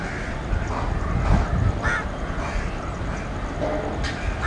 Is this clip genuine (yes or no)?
yes